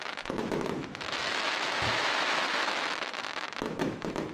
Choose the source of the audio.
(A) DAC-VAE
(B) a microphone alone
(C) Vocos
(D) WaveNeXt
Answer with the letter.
A